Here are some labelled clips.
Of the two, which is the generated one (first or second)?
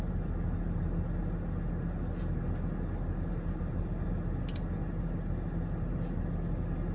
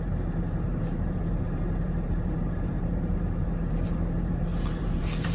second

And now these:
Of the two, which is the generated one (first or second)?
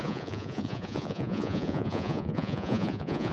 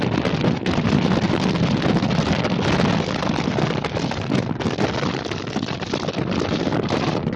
first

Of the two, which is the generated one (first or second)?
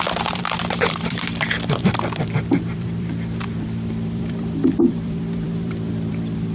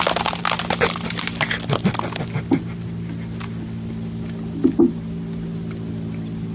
first